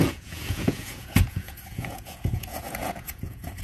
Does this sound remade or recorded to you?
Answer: remade